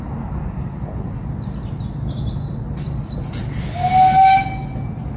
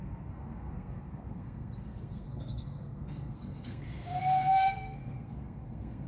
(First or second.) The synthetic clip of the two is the second